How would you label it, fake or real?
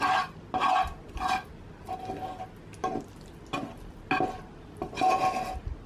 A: real